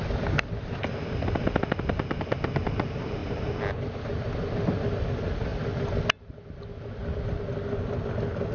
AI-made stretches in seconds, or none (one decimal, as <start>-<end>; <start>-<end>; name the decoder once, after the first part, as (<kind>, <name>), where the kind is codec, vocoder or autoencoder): none